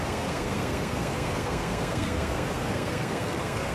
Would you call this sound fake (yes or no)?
yes